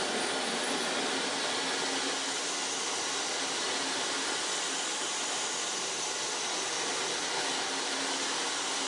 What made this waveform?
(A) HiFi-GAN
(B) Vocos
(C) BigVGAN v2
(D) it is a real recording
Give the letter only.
D